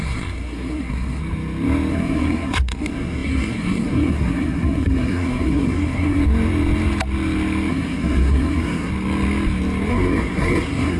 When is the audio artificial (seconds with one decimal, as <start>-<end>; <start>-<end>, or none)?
0.0-1.2; 1.9-6.2; 7.7-8.9; 9.9-11.0